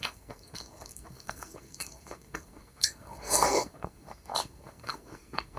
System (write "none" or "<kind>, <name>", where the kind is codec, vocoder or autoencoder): codec, SNAC